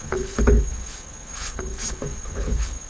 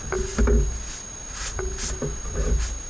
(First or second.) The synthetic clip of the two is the first